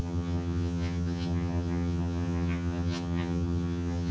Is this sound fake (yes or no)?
yes